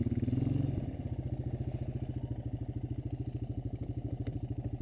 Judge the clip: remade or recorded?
recorded